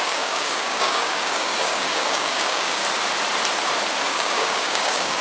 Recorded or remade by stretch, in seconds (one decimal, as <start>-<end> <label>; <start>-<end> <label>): 0.0-2.8 remade; 2.8-4.0 recorded; 4.0-5.2 remade

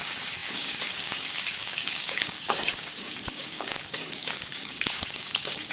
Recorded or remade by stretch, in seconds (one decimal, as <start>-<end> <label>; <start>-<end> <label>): 0.0-5.7 remade

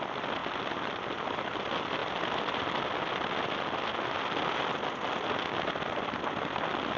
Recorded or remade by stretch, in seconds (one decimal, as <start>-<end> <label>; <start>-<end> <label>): 0.0-7.0 recorded

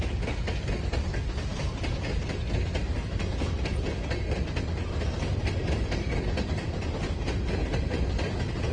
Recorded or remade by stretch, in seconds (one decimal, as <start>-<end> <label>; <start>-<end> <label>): 0.0-8.7 recorded

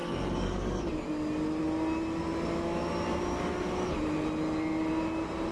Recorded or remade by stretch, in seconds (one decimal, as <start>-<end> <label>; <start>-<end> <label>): 0.0-0.8 remade; 0.8-5.5 recorded

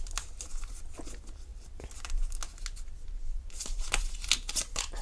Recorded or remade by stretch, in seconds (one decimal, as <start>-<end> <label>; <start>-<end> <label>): 0.0-5.0 recorded

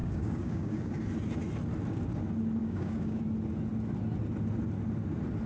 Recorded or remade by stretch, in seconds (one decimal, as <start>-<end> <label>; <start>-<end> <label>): 0.0-1.0 remade; 1.0-2.6 recorded; 2.6-3.2 remade; 3.2-5.5 recorded